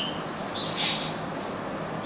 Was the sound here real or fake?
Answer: real